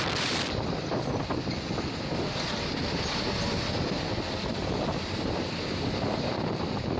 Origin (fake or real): fake